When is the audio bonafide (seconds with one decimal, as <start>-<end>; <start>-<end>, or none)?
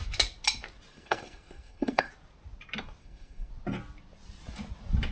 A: 0.0-0.9; 2.1-3.0; 3.5-5.1